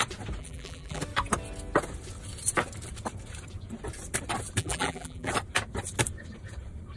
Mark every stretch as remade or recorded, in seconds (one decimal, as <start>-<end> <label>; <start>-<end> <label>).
0.0-0.4 recorded; 0.4-1.0 remade; 1.0-4.6 recorded; 4.6-5.3 remade; 5.3-7.0 recorded